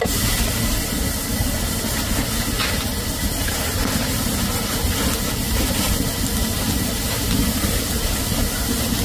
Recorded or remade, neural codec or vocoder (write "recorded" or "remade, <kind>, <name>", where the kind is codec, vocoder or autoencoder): recorded